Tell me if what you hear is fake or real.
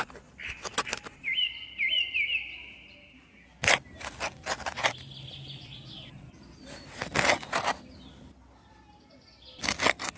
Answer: real